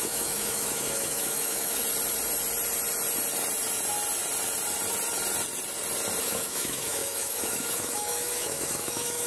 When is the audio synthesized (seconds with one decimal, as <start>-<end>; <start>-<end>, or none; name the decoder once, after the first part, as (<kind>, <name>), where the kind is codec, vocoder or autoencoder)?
0.0-1.8 (autoencoder, DAC-VAE); 6.2-9.3